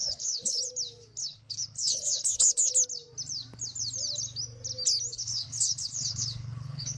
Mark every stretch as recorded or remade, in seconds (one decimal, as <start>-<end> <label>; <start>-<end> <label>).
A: 0.0-0.6 remade; 0.6-1.2 recorded; 1.2-2.7 remade; 2.7-5.1 recorded; 5.1-7.0 remade